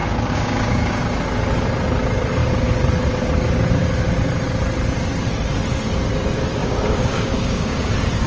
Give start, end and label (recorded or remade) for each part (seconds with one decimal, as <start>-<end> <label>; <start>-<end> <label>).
0.0-1.0 remade; 1.0-6.6 recorded; 6.6-7.9 remade; 7.9-8.3 recorded